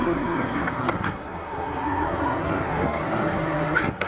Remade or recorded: remade